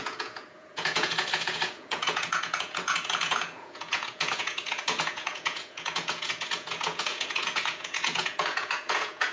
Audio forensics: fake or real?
fake